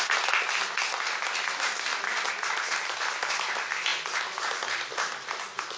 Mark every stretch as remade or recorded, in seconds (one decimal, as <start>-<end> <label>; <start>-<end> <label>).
0.0-5.8 recorded